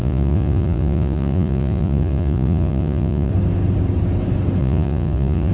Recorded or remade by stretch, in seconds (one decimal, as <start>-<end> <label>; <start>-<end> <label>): 0.0-3.3 remade; 3.3-4.6 recorded; 4.6-5.5 remade